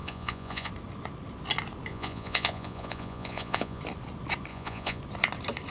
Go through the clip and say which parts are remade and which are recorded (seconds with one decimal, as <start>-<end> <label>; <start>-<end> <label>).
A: 0.0-0.7 remade; 0.7-1.9 recorded; 1.9-3.8 remade; 3.8-4.5 recorded; 4.5-5.0 remade; 5.0-5.7 recorded